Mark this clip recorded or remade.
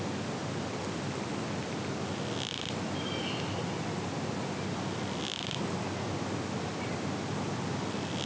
recorded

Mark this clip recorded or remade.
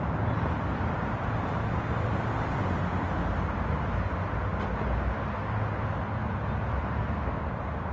recorded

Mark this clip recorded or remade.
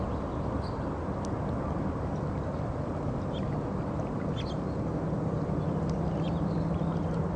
recorded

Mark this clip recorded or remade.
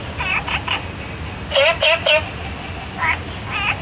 recorded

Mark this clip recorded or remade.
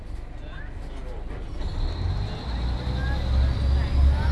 recorded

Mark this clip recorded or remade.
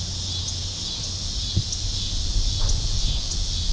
recorded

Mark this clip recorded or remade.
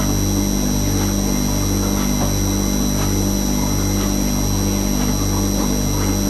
recorded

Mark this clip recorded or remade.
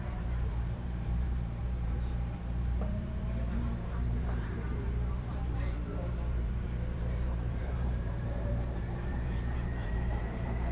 remade